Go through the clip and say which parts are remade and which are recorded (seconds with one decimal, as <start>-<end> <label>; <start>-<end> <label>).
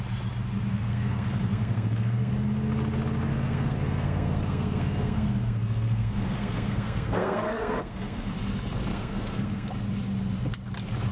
0.0-0.7 recorded; 0.7-2.3 remade; 2.3-3.3 recorded; 3.3-8.3 remade; 8.3-8.9 recorded; 8.9-9.7 remade; 9.7-11.1 recorded